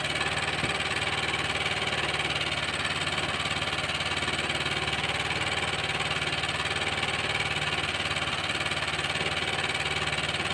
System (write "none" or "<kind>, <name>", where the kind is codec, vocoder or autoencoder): none